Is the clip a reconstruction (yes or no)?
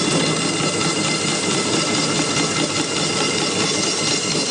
no